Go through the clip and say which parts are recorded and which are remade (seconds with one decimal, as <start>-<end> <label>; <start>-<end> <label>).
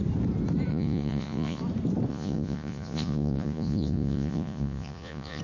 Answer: 0.0-0.7 recorded; 0.7-1.6 remade; 1.6-2.1 recorded; 2.1-5.4 remade